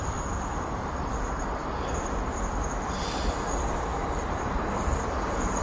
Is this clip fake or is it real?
real